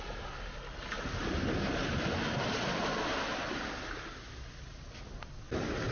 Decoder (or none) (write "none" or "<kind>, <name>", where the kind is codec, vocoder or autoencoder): none